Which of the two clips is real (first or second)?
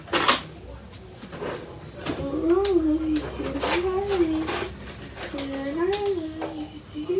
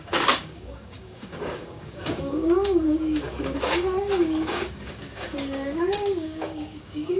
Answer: first